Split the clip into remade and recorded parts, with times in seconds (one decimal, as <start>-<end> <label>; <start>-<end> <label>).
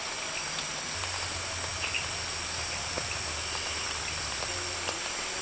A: 0.0-5.4 recorded